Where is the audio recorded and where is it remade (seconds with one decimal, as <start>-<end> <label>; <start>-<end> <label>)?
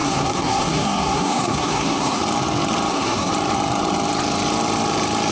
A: 0.0-2.2 remade; 2.2-2.9 recorded; 2.9-3.3 remade; 3.3-5.3 recorded